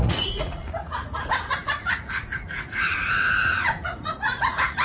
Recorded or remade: remade